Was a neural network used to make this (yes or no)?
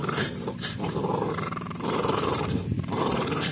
yes